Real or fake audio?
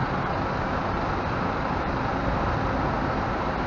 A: real